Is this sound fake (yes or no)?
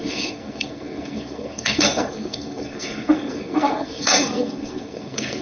yes